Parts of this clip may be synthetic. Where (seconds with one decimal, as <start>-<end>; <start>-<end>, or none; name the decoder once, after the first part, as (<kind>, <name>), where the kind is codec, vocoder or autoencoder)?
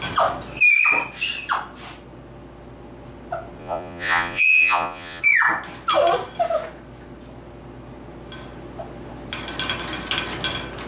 3.6-5.2 (vocoder, Vocos)